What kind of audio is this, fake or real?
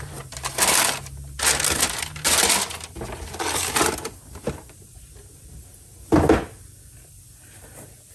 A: real